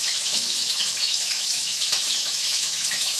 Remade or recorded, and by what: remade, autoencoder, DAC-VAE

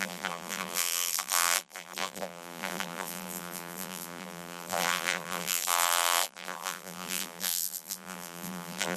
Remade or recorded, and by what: remade, vocoder, BigVGAN v2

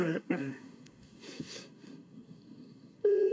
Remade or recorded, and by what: remade, codec, SNAC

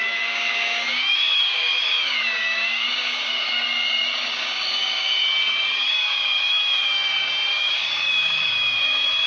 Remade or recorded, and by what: remade, codec, DAC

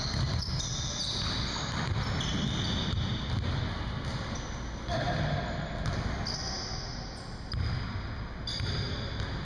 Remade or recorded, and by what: recorded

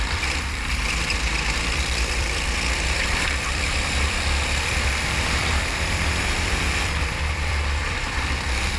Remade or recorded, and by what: remade, vocoder, BigVGAN v2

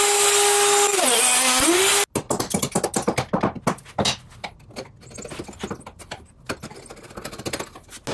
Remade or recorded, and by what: recorded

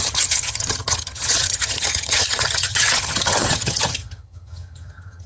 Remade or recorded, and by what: remade, vocoder, HiFi-GAN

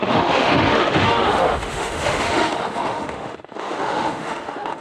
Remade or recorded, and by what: remade, autoencoder, DAC-VAE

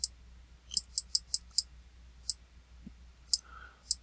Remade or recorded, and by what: recorded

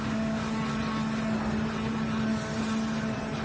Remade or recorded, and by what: recorded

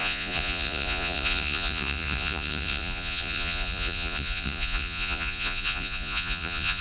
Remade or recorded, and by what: remade, vocoder, Vocos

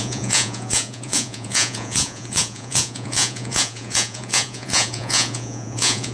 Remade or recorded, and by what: remade, vocoder, Vocos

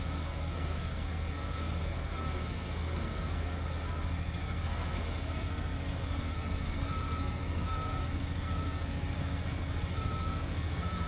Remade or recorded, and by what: remade, codec, SNAC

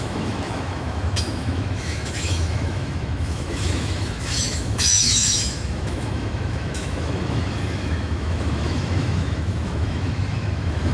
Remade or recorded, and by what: remade, autoencoder, DAC-VAE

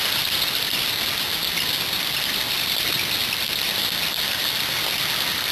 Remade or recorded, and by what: recorded